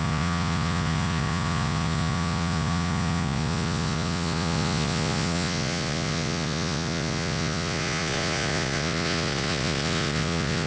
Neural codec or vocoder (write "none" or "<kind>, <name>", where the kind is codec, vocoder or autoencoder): vocoder, Vocos